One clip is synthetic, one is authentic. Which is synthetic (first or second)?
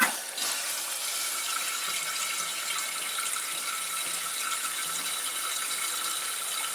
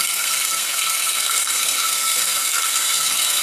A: second